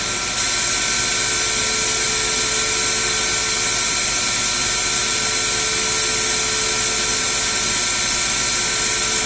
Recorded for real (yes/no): yes